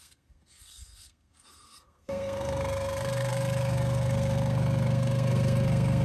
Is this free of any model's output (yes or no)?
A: no